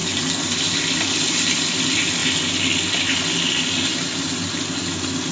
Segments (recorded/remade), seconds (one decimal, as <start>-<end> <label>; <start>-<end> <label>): 0.0-5.3 recorded